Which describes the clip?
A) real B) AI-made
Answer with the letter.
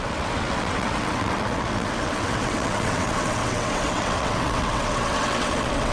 B